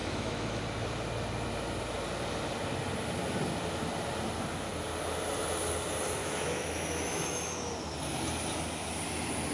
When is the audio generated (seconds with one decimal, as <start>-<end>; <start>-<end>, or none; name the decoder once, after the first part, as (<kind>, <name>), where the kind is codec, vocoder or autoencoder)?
0.0-0.6 (autoencoder, DAC-VAE); 6.2-7.7

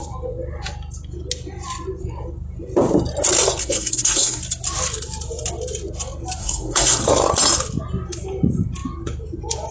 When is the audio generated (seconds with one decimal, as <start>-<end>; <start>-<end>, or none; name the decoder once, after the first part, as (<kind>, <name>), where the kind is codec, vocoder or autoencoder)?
3.6-4.4 (codec, SNAC); 6.4-7.0